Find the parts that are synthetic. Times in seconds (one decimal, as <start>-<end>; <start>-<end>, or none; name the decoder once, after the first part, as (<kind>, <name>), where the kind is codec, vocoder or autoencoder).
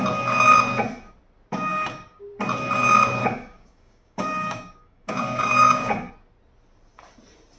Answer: 1.7-2.2 (codec, DAC); 3.2-6.1